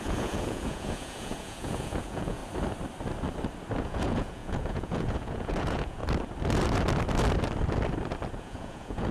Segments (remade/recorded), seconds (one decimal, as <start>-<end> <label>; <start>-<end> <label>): 0.0-2.4 remade; 2.4-3.8 recorded; 3.8-6.0 remade; 6.0-8.4 recorded; 8.4-9.1 remade